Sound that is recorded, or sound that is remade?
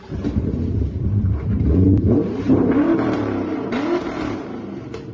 remade